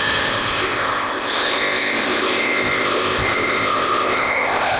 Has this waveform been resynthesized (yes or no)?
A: yes